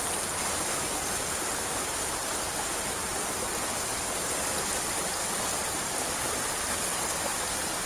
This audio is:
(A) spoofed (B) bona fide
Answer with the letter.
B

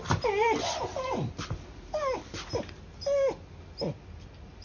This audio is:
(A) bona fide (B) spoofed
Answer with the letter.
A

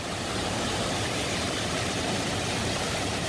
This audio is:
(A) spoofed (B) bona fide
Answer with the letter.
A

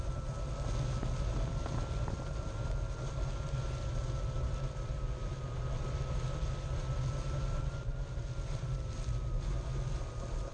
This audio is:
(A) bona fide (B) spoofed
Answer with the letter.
A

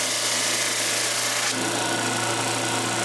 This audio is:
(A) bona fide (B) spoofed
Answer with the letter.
A